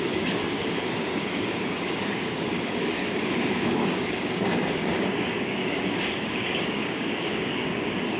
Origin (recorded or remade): remade